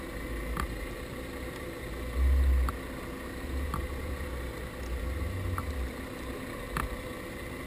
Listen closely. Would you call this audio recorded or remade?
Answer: recorded